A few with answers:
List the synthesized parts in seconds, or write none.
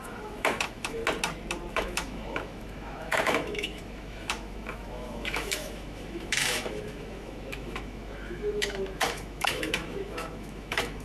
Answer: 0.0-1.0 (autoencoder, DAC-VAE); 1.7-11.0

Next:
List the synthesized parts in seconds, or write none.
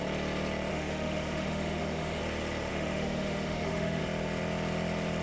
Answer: 0.7-2.2 (autoencoder, DAC-VAE); 2.7-4.0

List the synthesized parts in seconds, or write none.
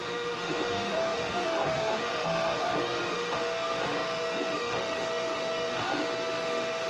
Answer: 0.0-6.9 (autoencoder, DAC-VAE)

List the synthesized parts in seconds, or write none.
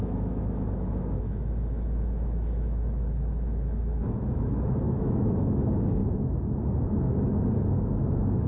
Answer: 0.0-6.0 (autoencoder, DAC-VAE); 7.8-8.5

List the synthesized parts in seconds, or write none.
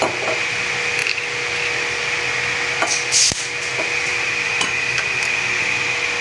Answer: none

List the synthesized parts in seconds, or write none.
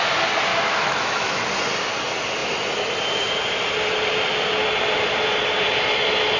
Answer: 0.5-1.4 (autoencoder, DAC-VAE)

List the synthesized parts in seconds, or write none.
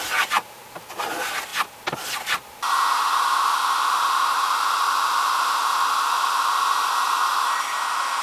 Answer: none